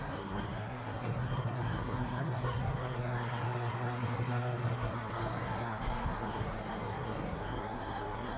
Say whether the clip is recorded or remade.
remade